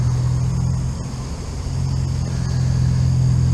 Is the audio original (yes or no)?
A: yes